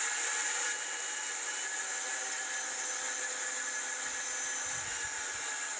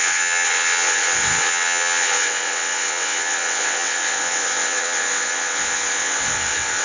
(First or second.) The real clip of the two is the first